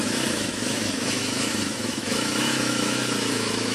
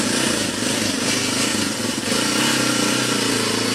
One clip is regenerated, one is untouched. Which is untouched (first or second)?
second